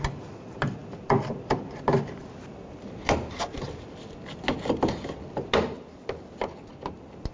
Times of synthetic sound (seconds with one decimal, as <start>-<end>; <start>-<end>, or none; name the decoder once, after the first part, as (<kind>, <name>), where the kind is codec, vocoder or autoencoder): none